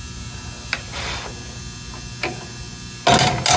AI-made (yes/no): no